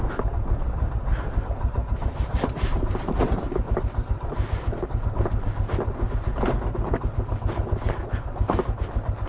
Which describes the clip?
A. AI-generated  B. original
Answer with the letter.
B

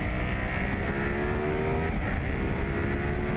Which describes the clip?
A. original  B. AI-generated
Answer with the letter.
A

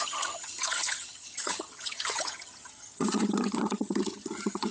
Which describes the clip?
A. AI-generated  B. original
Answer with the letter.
A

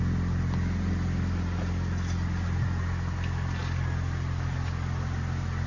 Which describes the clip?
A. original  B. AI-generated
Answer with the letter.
A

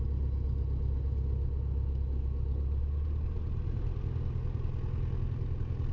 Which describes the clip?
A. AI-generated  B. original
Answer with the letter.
B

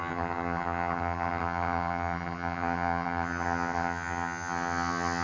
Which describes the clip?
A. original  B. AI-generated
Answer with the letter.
B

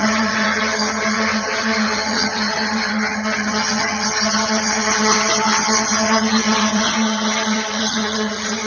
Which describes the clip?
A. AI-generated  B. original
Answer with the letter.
A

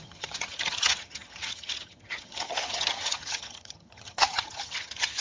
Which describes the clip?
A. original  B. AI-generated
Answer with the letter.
B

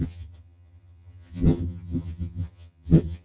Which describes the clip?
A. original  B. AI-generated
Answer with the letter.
B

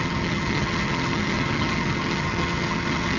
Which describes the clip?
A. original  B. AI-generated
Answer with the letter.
B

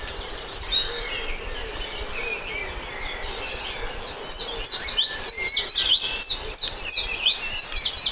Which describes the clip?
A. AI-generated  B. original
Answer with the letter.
B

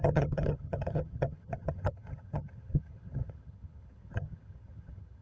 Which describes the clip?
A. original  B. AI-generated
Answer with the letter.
B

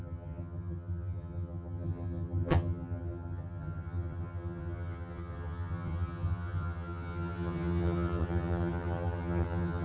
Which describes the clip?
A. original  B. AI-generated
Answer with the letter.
B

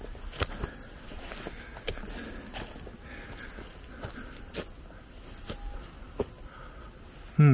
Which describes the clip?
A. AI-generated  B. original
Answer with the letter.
B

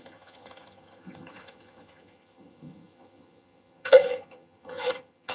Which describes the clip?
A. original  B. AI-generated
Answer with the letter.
B